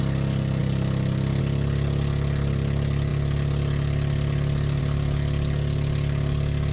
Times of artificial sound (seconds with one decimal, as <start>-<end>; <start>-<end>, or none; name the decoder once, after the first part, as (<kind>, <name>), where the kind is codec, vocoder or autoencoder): none